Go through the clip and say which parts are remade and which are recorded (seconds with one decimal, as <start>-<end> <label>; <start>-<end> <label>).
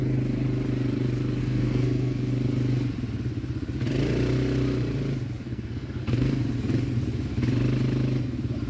0.0-1.4 recorded; 1.4-2.3 remade; 2.3-5.4 recorded; 5.4-6.4 remade; 6.4-8.7 recorded